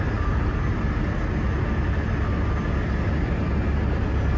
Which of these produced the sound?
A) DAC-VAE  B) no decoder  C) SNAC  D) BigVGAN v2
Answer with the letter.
B